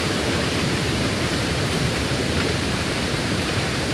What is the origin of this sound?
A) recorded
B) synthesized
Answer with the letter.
B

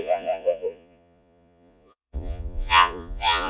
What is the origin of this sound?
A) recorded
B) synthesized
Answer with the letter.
B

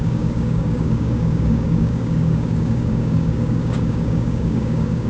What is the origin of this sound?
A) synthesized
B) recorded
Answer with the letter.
A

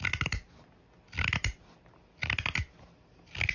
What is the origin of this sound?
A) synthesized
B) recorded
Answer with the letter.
B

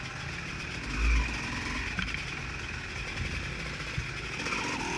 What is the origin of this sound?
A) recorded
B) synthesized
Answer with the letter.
A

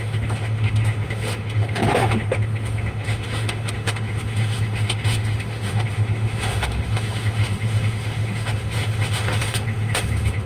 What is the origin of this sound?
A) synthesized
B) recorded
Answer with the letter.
A